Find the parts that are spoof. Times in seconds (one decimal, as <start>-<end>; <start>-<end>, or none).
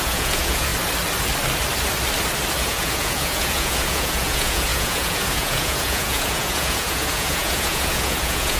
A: 0.0-0.7; 2.6-8.6